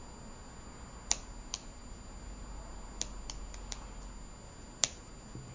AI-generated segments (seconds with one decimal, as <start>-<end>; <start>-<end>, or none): none